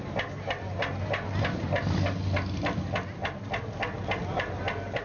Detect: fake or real real